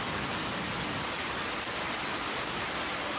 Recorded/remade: recorded